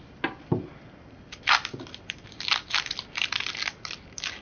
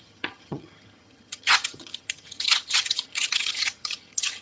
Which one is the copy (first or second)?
second